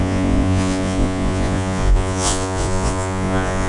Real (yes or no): no